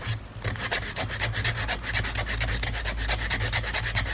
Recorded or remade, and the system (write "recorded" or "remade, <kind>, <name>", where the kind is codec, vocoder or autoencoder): recorded